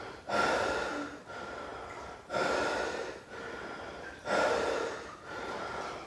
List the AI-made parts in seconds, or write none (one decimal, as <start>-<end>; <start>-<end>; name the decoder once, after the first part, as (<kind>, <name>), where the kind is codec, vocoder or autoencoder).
none